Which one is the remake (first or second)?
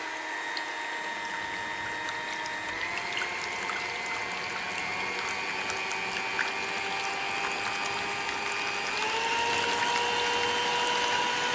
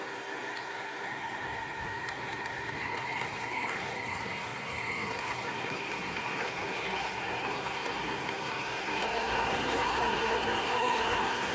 second